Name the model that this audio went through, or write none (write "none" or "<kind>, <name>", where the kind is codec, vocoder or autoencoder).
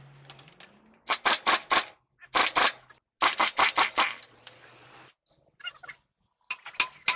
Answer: none